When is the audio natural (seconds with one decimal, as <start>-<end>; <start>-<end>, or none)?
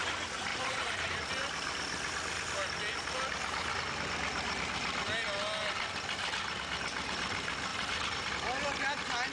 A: 0.0-0.5; 1.3-7.7; 8.3-9.3